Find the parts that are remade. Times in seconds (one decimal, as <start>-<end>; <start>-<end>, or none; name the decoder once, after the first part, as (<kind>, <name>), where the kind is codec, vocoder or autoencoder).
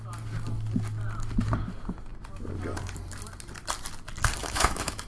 4.4-5.1 (autoencoder, DAC-VAE)